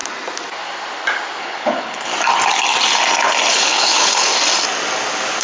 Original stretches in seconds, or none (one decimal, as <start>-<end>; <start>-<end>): 0.0-1.4; 2.1-3.5; 4.3-5.4